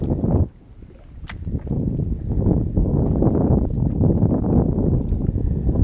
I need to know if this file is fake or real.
real